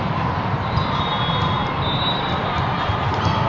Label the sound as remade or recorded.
recorded